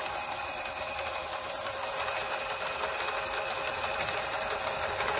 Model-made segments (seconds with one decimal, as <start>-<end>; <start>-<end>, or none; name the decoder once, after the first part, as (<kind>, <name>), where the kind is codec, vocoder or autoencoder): none